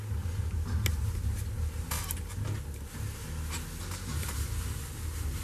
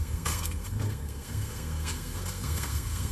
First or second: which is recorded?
first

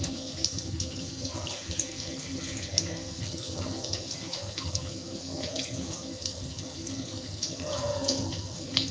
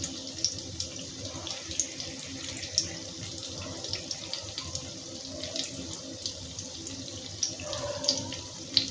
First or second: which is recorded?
second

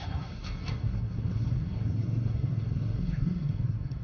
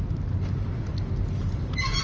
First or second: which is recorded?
second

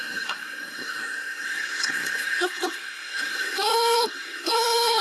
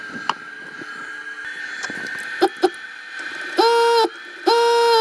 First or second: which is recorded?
second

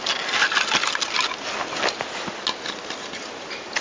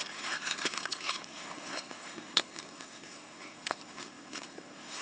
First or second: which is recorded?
first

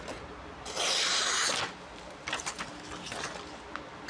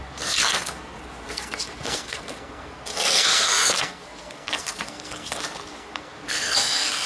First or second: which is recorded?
first